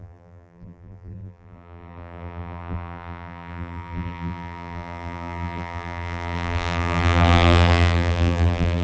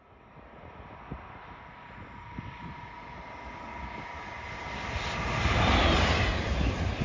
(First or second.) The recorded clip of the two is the second